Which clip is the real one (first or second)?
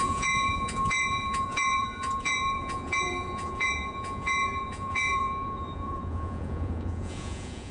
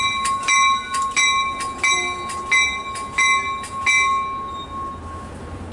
second